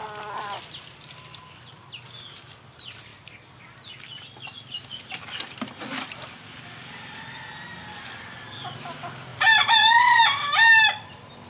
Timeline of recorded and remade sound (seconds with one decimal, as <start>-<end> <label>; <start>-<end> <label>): 0.0-9.3 recorded; 9.3-10.7 remade; 10.7-11.5 recorded